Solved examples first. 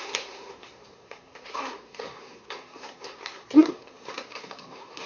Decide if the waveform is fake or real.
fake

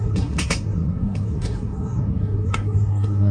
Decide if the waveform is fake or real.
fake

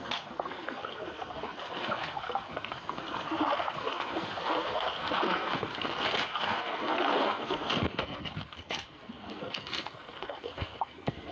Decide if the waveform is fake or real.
fake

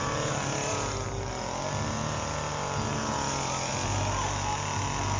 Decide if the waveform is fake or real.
real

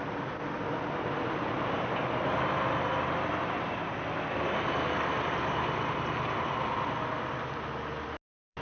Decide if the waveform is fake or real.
real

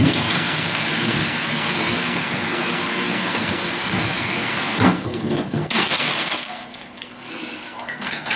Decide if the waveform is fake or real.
fake